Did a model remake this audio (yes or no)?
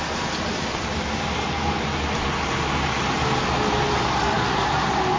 no